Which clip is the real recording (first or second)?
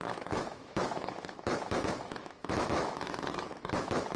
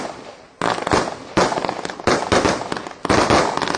second